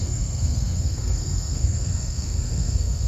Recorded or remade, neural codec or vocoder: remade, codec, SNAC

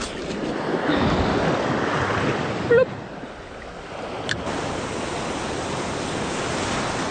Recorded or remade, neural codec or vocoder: recorded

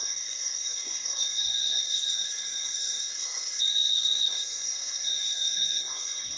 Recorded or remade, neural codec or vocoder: remade, codec, SNAC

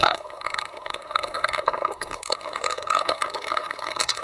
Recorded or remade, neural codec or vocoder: remade, codec, SNAC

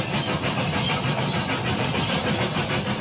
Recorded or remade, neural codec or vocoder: recorded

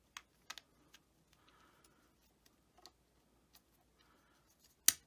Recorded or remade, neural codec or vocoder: recorded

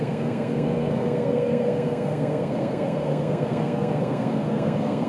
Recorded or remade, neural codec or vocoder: remade, codec, SNAC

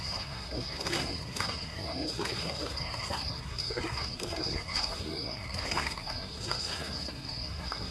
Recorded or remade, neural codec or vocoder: remade, codec, SNAC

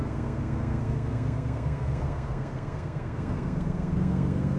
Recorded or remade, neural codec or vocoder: remade, codec, SNAC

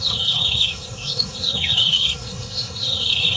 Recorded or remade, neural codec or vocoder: remade, codec, SNAC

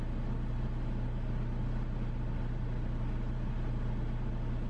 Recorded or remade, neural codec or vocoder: recorded